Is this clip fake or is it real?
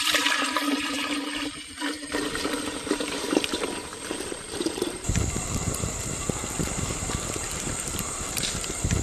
fake